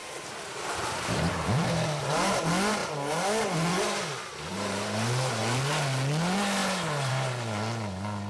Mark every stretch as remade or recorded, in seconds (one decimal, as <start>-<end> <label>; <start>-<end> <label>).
0.0-2.4 remade; 2.4-4.3 recorded; 4.3-5.4 remade; 5.4-8.3 recorded